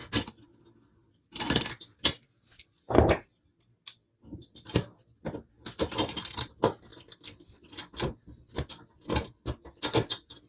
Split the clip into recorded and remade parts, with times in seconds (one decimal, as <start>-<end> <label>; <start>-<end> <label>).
0.0-10.5 recorded